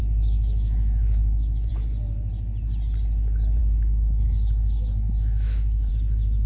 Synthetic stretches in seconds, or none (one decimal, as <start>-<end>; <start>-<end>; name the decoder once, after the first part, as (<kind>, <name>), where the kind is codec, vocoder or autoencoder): 0.0-1.7 (autoencoder, DAC-VAE); 3.6-5.9